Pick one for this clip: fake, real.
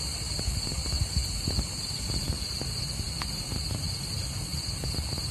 real